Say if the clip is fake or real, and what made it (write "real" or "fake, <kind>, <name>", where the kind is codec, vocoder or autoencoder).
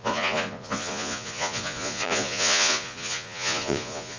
fake, vocoder, Vocos